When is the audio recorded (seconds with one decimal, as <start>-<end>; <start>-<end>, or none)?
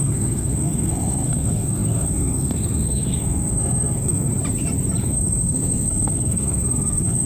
4.3-5.0